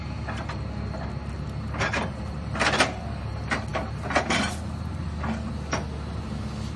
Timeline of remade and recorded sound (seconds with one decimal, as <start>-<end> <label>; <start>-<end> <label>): 0.0-6.8 recorded